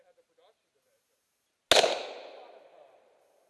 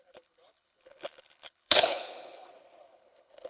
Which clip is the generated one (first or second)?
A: second